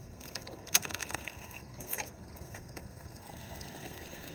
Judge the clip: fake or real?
fake